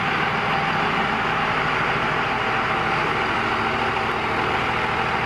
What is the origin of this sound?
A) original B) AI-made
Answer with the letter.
A